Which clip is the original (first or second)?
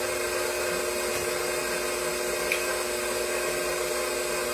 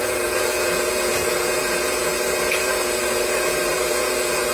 first